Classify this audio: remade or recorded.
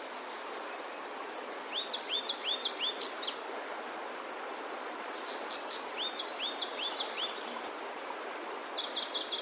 recorded